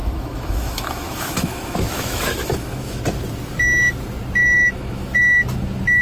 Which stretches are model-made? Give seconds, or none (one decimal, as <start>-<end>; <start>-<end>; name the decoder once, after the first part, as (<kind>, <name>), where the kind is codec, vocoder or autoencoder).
0.0-3.0 (autoencoder, DAC-VAE); 4.4-5.2